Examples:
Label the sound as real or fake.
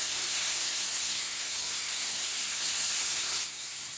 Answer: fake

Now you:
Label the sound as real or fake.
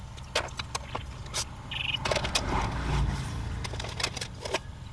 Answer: real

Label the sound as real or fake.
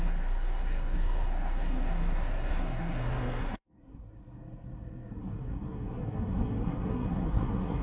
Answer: fake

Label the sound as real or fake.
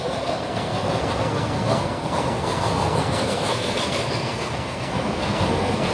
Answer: fake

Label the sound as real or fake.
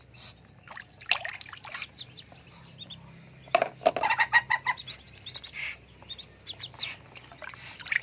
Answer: real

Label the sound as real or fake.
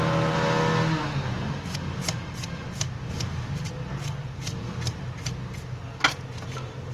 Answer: real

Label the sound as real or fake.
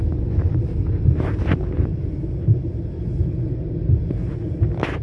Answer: real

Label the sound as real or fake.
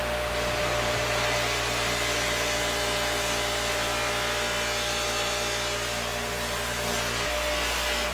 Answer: real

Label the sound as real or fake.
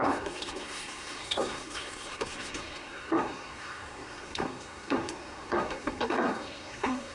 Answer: fake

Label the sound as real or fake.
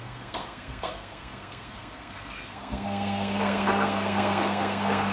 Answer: fake